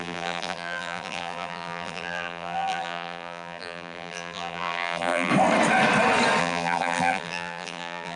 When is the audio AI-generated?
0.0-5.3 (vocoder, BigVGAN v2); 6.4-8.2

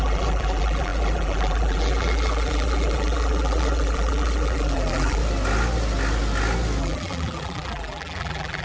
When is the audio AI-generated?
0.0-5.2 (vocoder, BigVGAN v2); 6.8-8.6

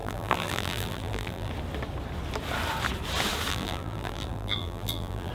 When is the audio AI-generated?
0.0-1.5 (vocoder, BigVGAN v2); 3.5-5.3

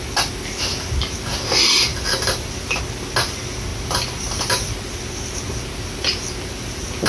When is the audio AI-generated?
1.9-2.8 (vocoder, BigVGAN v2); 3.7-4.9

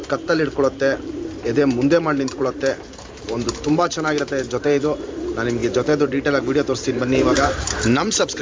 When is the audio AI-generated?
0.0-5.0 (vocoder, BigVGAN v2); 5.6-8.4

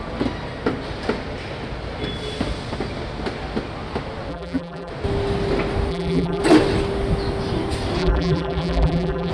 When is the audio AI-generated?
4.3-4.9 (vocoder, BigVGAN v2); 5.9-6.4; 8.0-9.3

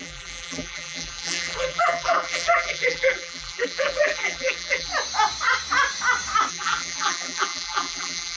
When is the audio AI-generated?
0.0-4.9 (vocoder, BigVGAN v2); 6.5-8.4

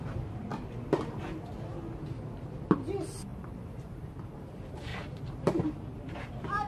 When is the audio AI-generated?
0.0-0.5 (vocoder, BigVGAN v2); 2.0-6.7